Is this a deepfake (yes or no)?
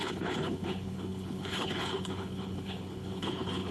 yes